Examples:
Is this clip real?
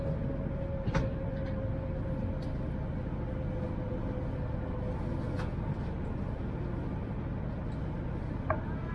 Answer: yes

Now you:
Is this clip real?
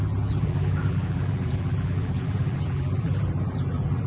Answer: no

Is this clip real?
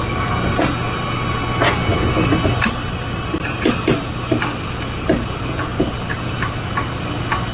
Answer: yes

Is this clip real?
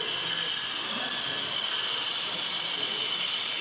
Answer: no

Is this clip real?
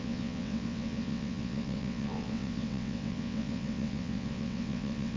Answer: no